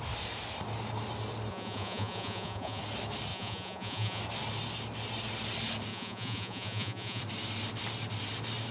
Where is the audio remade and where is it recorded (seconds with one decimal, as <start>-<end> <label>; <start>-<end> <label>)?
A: 0.0-1.5 recorded; 1.5-2.8 remade; 2.8-3.3 recorded; 3.3-4.2 remade; 4.2-5.9 recorded; 5.9-7.2 remade; 7.2-8.7 recorded